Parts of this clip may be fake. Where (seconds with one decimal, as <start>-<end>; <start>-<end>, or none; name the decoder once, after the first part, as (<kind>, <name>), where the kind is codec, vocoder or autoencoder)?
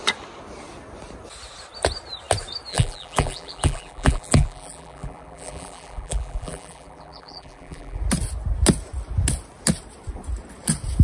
2.7-8.0 (vocoder, BigVGAN v2)